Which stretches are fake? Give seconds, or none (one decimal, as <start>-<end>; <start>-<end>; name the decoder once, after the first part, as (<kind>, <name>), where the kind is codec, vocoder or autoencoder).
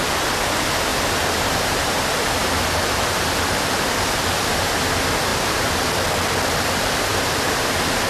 0.9-4.8 (vocoder, BigVGAN v2); 5.3-5.8